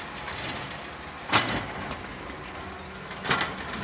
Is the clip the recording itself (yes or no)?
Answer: yes